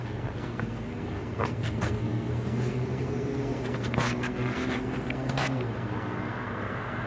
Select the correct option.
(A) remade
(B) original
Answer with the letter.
A